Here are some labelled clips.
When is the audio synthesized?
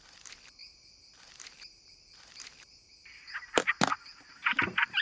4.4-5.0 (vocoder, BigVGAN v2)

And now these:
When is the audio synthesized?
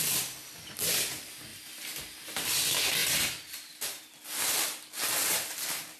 1.5-2.0 (vocoder, BigVGAN v2); 3.0-4.2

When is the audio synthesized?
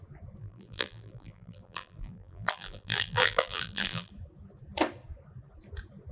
0.4-4.1 (vocoder, BigVGAN v2)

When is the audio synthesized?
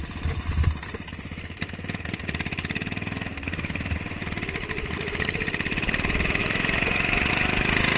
none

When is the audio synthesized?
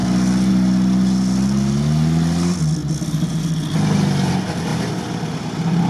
none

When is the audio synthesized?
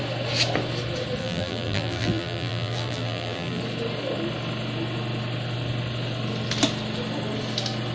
1.2-3.6 (vocoder, BigVGAN v2)